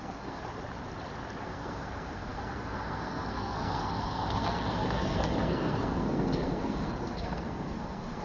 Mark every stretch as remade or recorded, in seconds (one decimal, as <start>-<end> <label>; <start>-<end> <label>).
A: 0.0-0.4 remade; 0.4-1.4 recorded; 1.4-8.2 remade